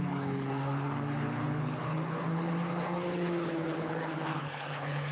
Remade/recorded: remade